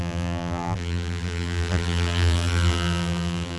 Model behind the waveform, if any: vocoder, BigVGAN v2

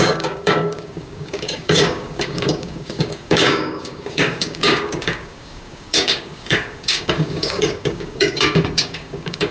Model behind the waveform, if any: codec, DAC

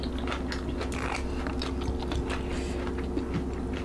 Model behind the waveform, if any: none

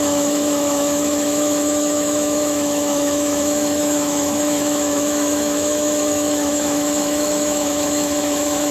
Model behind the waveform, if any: autoencoder, DAC-VAE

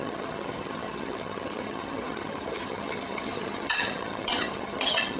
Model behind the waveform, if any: vocoder, HiFi-GAN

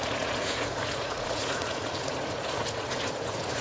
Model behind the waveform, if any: vocoder, Vocos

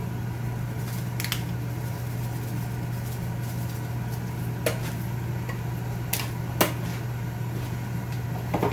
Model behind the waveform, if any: none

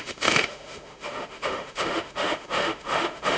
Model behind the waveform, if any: autoencoder, DAC-VAE